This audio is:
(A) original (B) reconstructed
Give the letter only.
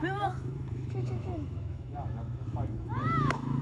B